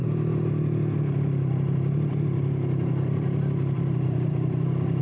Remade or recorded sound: recorded